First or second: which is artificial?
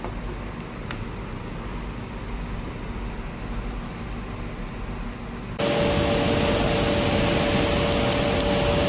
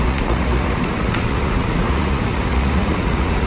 second